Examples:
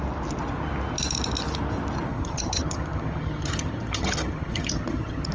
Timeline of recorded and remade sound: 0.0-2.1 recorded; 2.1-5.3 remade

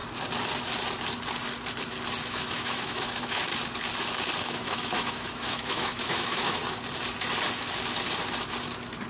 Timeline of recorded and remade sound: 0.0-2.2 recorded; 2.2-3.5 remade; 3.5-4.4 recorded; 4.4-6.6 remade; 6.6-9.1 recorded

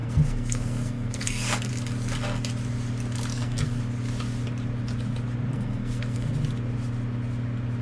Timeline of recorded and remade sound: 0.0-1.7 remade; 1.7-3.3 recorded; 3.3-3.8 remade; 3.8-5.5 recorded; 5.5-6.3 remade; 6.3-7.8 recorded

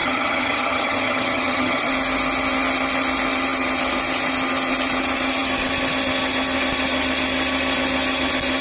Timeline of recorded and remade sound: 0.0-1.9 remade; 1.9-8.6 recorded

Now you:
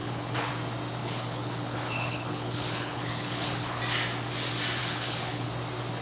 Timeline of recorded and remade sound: 0.0-0.5 remade; 0.5-1.0 recorded; 1.0-3.8 remade; 3.8-4.8 recorded; 4.8-5.5 remade; 5.5-6.0 recorded